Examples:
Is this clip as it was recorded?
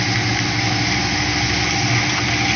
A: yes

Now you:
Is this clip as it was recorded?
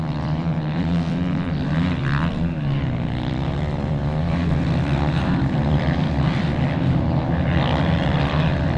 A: no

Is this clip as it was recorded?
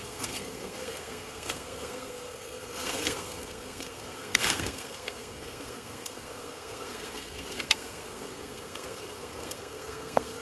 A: no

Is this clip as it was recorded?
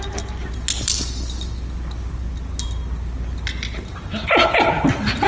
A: yes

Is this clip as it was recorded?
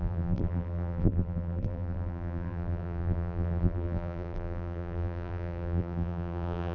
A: no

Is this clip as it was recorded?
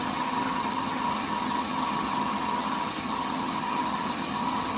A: no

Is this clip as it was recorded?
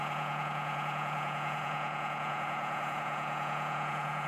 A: no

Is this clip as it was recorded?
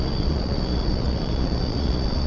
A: no